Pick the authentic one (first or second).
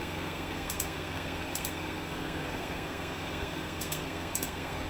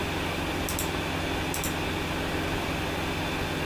second